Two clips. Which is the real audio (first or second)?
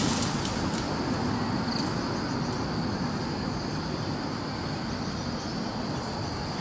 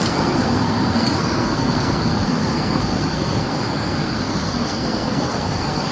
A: first